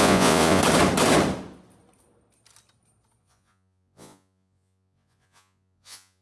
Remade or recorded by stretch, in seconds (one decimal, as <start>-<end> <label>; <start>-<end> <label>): 0.0-0.6 remade; 0.6-3.2 recorded; 3.2-6.2 remade